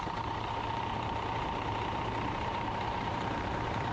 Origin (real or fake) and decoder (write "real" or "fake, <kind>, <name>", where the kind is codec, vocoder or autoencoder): fake, vocoder, BigVGAN v2